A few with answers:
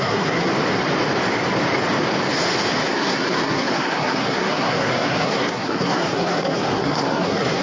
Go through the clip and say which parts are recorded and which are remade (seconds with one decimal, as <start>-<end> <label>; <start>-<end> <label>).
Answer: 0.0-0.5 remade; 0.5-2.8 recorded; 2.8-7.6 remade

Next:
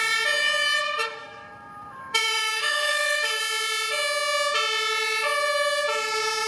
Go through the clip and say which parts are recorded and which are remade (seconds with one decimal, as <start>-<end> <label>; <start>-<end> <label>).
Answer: 0.0-1.2 recorded; 1.2-3.4 remade; 3.4-6.5 recorded

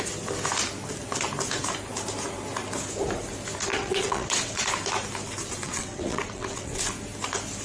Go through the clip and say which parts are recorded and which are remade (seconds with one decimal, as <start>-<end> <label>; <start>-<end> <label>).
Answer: 0.0-3.7 recorded; 3.7-4.6 remade; 4.6-5.6 recorded; 5.6-6.9 remade; 6.9-7.6 recorded

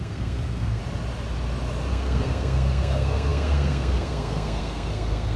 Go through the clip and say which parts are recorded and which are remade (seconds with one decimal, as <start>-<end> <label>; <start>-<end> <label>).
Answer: 0.0-0.8 remade; 0.8-1.9 recorded; 1.9-5.4 remade